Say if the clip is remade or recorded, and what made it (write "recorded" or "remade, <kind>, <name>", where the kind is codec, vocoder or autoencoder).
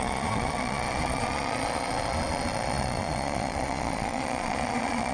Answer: remade, vocoder, Vocos